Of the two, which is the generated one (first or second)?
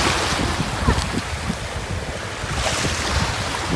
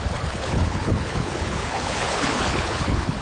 second